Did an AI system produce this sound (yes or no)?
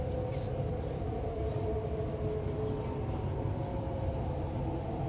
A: no